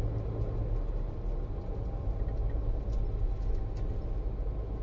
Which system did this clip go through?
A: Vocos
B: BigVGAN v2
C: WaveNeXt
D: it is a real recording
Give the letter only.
D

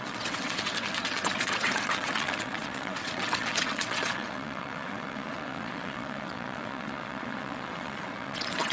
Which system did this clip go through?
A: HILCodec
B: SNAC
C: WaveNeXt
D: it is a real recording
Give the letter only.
C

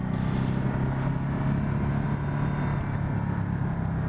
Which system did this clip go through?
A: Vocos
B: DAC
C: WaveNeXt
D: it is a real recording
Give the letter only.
D